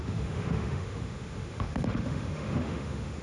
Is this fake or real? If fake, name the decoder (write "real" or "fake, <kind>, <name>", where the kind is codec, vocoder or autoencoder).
fake, autoencoder, DAC-VAE